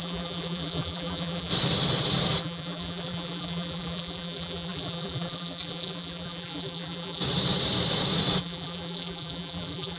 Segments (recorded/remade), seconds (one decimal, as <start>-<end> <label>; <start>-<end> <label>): 0.0-1.5 remade; 1.5-2.4 recorded; 2.4-7.2 remade; 7.2-8.4 recorded; 8.4-10.0 remade